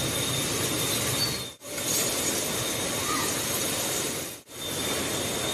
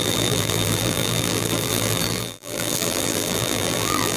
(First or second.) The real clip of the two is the first